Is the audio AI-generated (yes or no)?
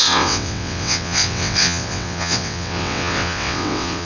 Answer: yes